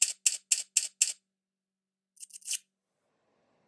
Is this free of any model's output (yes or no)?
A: yes